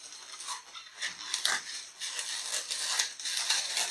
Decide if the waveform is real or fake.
real